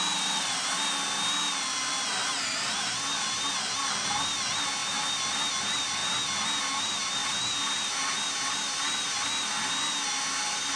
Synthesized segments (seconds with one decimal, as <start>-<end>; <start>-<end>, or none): none